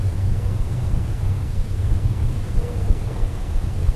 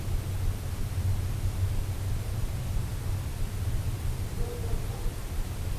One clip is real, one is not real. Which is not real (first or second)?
first